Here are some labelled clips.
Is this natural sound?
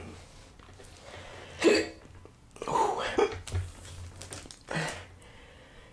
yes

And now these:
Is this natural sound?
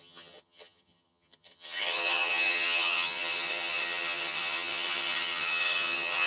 no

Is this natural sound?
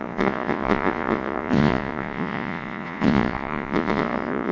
no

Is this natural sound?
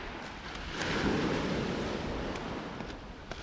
yes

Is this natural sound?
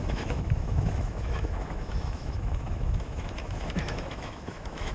no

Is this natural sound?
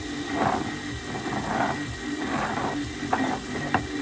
yes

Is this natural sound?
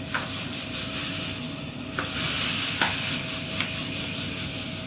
yes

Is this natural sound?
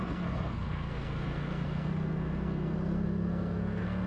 no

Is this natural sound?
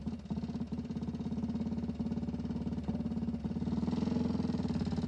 yes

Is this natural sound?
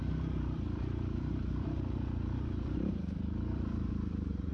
no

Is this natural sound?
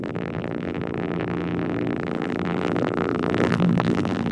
no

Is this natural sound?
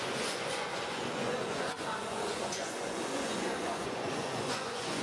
no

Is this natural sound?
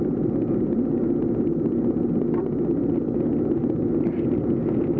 yes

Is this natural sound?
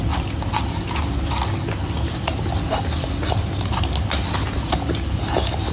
yes